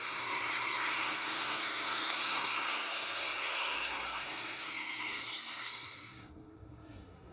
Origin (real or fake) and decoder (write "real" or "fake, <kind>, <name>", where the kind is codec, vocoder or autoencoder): fake, codec, SNAC